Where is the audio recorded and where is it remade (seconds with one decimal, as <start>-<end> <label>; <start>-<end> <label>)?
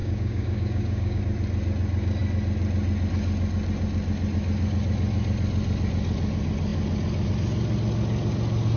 0.0-1.2 remade; 1.2-8.8 recorded